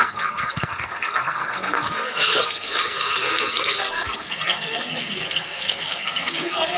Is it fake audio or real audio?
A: fake